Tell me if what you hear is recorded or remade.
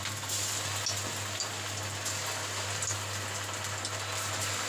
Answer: recorded